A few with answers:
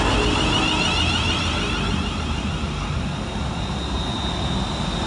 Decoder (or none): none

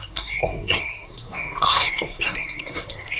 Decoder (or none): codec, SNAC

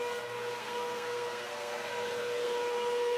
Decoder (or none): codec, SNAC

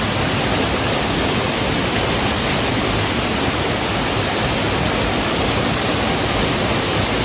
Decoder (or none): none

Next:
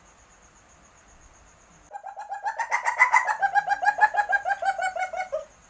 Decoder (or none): none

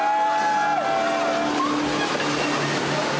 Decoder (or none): none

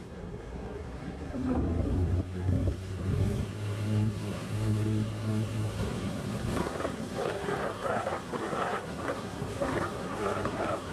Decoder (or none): codec, SNAC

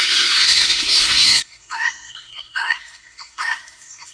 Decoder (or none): codec, SNAC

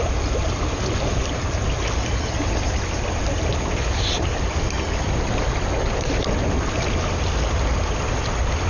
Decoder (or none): none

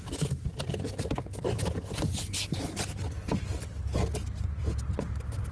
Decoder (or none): none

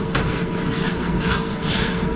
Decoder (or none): codec, SNAC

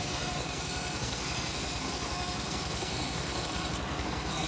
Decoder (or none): codec, SNAC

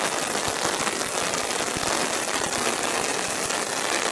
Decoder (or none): none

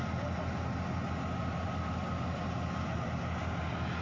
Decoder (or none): none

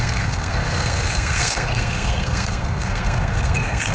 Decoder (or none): codec, SNAC